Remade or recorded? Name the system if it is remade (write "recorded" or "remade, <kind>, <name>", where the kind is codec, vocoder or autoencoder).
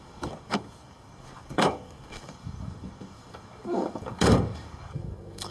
remade, codec, DAC